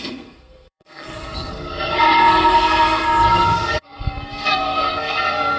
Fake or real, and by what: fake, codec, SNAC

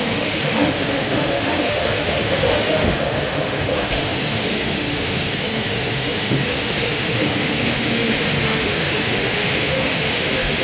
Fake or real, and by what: fake, autoencoder, DAC-VAE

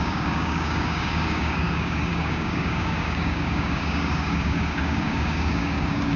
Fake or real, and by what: fake, codec, DAC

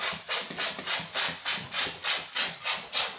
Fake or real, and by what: real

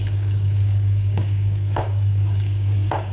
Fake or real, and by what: fake, codec, DAC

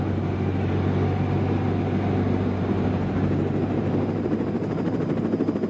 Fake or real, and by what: real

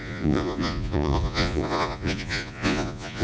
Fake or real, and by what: fake, vocoder, Vocos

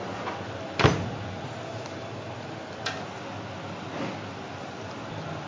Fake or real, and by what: real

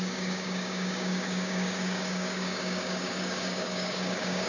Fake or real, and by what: fake, codec, DAC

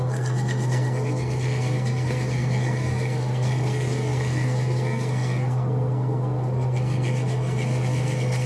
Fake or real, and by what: fake, codec, SNAC